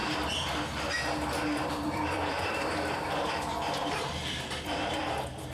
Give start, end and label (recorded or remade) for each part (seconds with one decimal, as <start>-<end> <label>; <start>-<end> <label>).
0.0-1.7 recorded; 1.7-5.5 remade